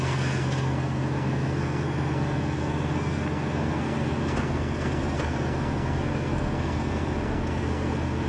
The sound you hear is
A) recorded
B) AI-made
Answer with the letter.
B